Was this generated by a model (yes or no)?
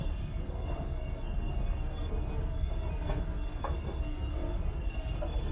yes